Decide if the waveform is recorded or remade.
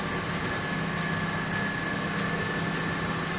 recorded